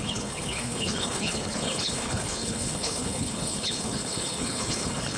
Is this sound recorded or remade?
remade